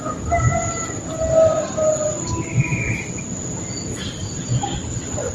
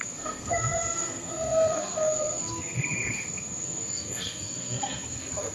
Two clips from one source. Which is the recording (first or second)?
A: first